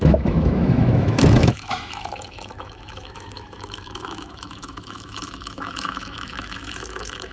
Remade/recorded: remade